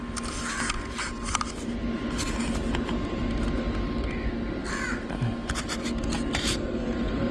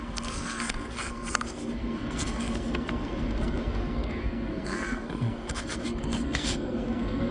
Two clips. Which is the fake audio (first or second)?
second